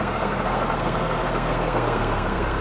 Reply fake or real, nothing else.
fake